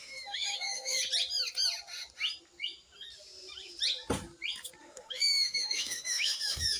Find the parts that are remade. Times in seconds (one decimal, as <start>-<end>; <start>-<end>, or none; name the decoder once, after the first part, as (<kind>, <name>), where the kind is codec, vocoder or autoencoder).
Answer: 0.0-1.0 (autoencoder, DAC-VAE); 4.8-6.8